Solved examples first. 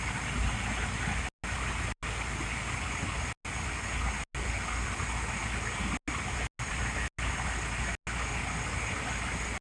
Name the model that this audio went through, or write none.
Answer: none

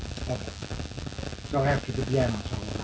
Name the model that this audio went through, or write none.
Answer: none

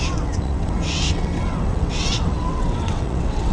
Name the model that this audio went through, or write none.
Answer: vocoder, WaveNeXt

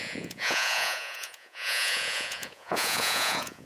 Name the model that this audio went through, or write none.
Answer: vocoder, Vocos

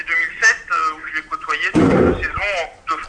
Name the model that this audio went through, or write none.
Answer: none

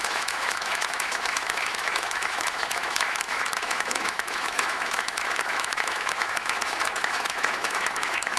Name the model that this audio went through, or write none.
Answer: autoencoder, DAC-VAE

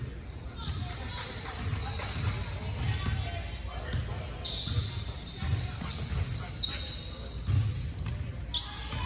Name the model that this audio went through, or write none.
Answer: none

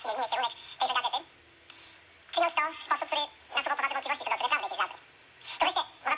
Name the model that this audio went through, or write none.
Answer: none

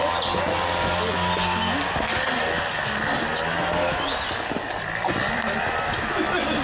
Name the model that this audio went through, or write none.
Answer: none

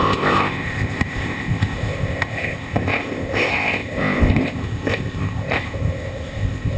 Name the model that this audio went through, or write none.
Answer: codec, ZipCodec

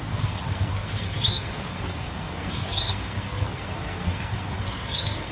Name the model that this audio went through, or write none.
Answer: codec, SNAC